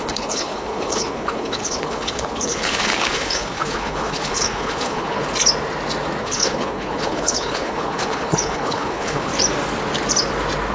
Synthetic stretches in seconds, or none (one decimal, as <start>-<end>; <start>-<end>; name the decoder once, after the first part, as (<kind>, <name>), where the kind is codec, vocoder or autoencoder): 0.0-5.2 (codec, HILCodec); 6.2-9.3

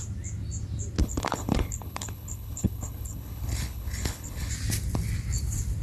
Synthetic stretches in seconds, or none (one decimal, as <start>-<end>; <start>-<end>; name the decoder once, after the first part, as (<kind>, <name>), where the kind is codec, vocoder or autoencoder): 1.0-4.5 (codec, HILCodec)

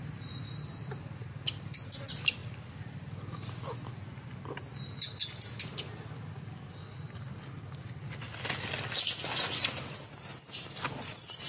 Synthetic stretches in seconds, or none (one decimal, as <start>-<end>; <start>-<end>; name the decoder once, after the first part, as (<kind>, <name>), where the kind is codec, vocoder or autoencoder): none

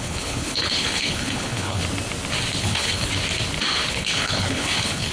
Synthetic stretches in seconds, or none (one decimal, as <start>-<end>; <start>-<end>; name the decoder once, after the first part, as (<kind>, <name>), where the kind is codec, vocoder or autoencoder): 0.0-1.8 (codec, HILCodec); 2.6-3.1; 3.9-5.1

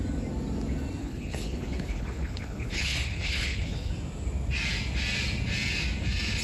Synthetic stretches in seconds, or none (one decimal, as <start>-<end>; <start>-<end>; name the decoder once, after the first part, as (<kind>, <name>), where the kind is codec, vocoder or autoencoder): 1.0-3.9 (codec, HILCodec)

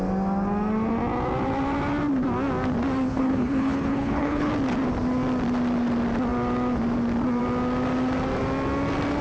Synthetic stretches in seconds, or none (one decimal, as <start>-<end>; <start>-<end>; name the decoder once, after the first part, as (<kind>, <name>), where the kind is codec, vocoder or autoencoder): 3.1-4.5 (codec, HILCodec)

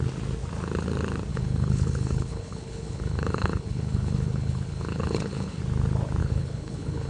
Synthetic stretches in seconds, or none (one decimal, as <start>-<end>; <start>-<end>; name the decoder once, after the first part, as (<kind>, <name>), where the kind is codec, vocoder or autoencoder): 1.3-5.6 (codec, HILCodec); 6.2-7.1

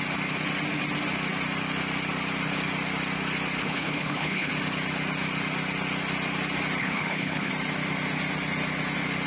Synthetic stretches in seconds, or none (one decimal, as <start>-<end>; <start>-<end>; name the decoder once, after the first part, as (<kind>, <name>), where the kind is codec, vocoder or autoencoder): 3.6-4.5 (codec, HILCodec); 6.8-7.5